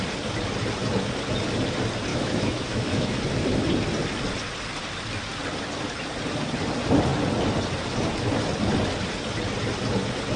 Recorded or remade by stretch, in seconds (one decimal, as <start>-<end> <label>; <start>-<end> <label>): 0.0-2.1 recorded; 2.1-3.2 remade; 3.2-10.4 recorded